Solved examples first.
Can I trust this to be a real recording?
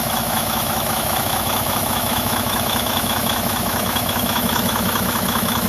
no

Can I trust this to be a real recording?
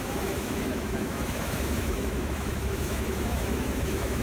no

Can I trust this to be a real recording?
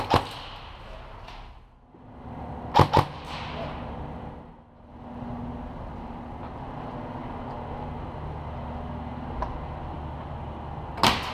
yes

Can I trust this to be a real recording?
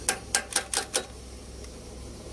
yes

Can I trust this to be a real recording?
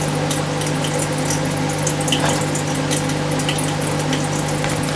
yes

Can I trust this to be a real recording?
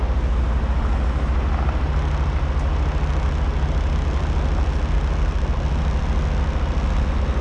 yes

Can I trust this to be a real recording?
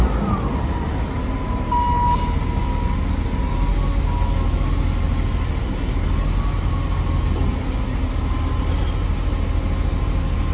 yes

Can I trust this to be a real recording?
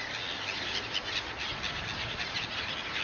yes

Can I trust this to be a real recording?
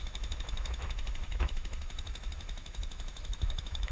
no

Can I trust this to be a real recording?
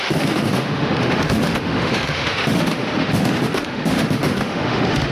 no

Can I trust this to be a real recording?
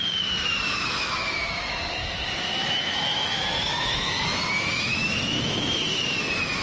no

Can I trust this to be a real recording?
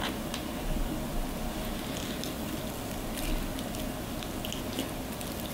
yes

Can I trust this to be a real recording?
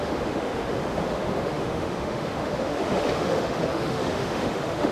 no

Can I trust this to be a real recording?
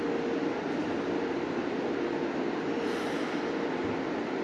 yes